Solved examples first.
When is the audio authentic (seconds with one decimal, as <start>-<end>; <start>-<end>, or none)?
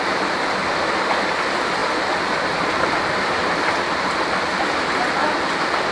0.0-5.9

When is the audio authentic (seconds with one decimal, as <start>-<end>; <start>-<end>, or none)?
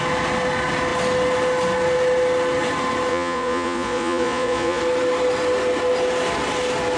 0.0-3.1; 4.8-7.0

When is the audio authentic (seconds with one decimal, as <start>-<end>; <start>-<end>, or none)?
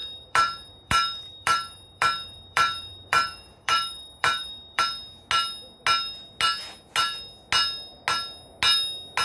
4.8-9.2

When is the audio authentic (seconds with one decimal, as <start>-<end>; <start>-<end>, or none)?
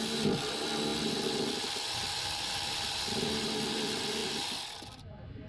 0.0-5.5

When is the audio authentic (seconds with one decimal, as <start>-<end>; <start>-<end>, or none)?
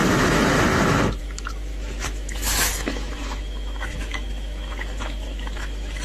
0.0-1.2